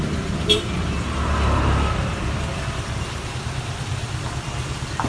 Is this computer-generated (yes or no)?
yes